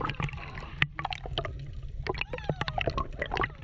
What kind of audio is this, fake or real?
real